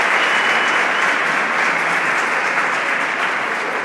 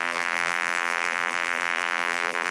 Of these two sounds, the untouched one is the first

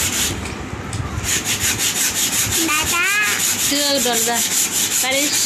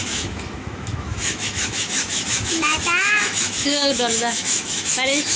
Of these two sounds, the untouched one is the first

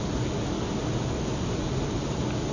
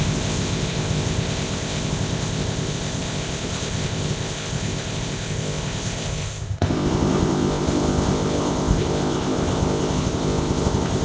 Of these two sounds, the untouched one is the first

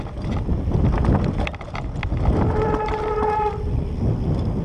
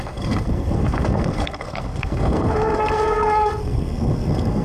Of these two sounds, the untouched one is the first